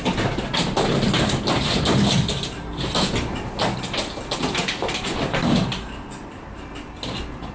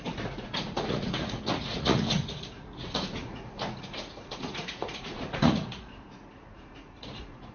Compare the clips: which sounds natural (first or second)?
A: first